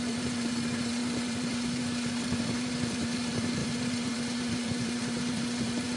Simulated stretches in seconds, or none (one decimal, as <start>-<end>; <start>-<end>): 0.0-6.0